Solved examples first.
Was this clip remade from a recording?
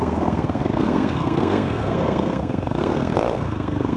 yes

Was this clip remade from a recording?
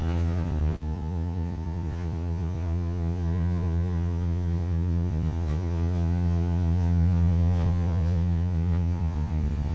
yes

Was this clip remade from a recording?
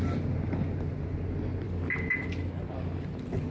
no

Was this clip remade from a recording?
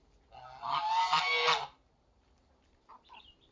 no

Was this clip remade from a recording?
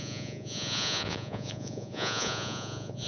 yes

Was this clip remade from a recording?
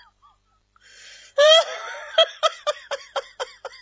yes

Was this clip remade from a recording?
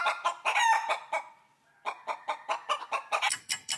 no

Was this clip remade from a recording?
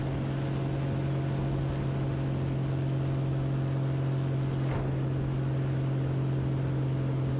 no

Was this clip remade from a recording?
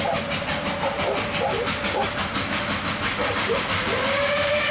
no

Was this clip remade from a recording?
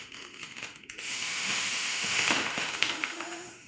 yes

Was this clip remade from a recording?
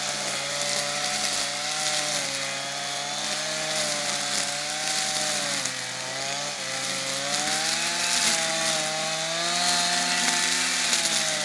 no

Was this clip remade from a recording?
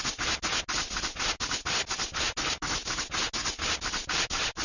no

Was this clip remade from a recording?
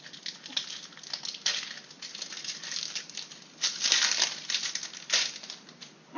no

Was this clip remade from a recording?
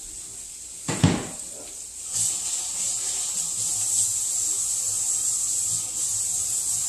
no